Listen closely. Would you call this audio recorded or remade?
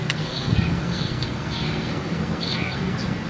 remade